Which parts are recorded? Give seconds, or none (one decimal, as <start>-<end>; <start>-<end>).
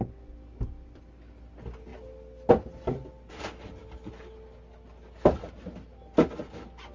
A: 0.0-6.9